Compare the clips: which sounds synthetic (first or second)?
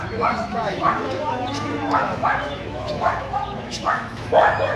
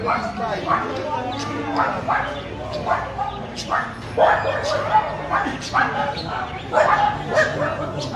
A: first